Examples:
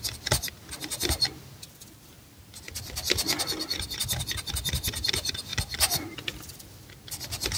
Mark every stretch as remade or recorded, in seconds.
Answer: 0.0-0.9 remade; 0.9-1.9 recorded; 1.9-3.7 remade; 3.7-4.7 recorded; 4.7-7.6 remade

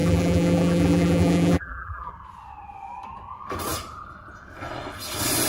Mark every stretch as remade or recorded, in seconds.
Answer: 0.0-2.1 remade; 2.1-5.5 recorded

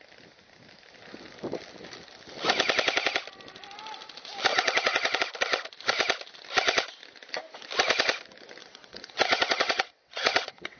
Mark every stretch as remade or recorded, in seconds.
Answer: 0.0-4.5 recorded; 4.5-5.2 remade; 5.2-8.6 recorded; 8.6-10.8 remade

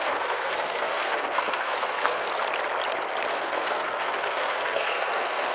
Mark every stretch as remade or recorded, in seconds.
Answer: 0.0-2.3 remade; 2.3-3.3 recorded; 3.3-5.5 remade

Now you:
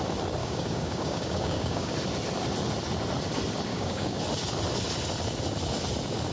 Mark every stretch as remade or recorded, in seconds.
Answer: 0.0-0.4 recorded; 0.4-1.9 remade; 1.9-3.7 recorded; 3.7-4.2 remade; 4.2-6.3 recorded

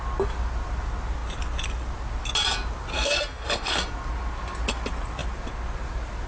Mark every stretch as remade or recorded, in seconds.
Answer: 0.0-2.9 recorded; 2.9-3.7 remade; 3.7-6.3 recorded

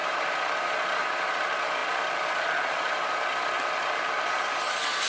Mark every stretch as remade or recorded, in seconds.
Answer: 0.0-5.1 recorded

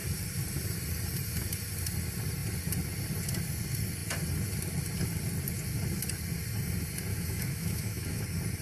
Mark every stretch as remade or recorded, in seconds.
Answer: 0.0-7.1 recorded; 7.1-8.2 remade; 8.2-8.6 recorded